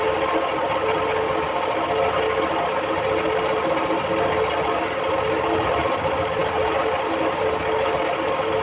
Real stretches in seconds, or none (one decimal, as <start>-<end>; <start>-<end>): 0.0-8.6